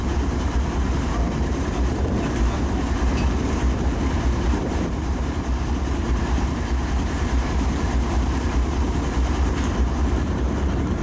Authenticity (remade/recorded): remade